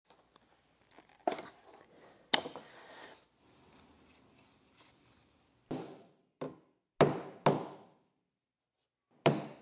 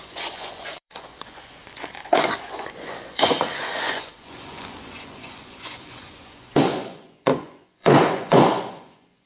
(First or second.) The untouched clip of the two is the first